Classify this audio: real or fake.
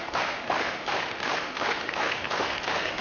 fake